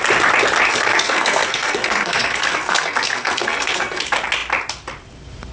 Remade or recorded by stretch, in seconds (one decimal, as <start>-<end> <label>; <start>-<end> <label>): 0.0-0.7 recorded; 0.7-4.0 remade; 4.0-5.5 recorded